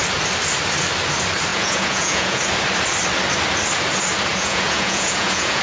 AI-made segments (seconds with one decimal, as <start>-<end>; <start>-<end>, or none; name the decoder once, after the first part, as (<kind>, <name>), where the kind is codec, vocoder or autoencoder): 1.5-2.4 (vocoder, Vocos); 4.3-5.6